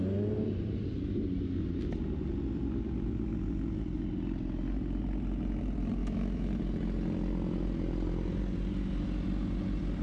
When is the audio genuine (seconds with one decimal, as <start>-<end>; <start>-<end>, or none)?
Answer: 0.0-6.0; 6.5-10.0